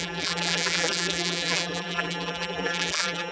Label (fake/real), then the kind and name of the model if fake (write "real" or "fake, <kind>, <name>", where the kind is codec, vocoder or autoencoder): fake, vocoder, BigVGAN v2